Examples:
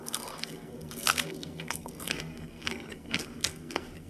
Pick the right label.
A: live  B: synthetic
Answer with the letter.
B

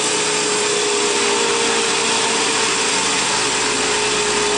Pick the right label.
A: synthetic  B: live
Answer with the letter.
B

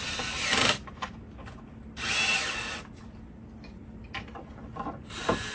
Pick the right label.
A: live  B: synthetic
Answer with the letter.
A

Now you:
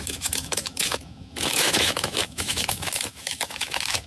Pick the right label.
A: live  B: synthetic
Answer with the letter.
B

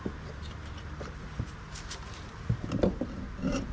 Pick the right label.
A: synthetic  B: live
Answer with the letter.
A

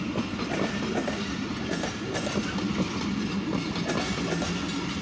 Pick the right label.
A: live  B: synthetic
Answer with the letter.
A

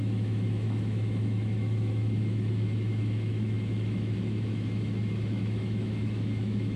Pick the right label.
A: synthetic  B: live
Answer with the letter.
A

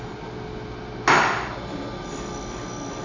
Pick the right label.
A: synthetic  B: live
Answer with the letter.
B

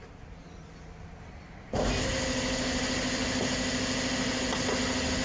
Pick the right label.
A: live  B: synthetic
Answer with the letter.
A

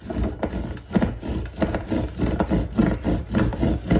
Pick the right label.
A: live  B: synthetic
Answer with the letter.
A